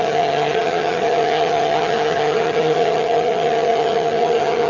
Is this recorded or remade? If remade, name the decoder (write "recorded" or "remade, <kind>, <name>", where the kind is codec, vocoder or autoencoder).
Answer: remade, vocoder, HiFi-GAN